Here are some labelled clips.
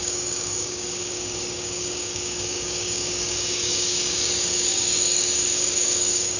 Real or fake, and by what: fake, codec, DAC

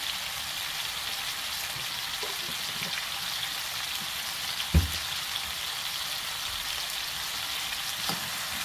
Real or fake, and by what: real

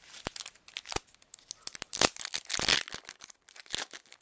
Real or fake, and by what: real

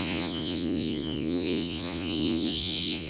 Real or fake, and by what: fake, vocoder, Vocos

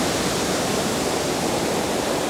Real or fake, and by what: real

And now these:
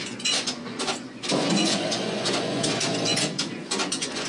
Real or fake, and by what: fake, vocoder, Vocos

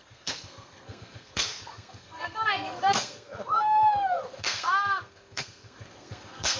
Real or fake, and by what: fake, codec, SNAC